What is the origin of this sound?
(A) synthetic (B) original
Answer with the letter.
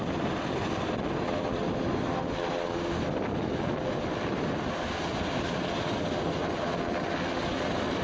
B